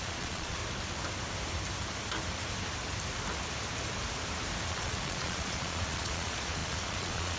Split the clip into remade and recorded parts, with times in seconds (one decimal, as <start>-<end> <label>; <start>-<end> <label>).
0.0-0.6 remade; 0.6-4.7 recorded; 4.7-7.4 remade